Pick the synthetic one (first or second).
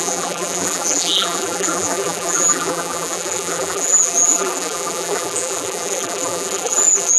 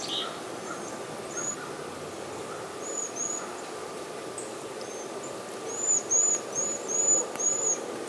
first